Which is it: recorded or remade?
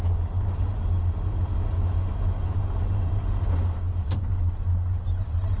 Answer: recorded